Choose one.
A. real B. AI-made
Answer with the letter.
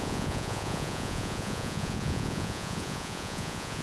B